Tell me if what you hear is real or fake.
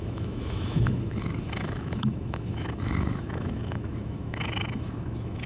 fake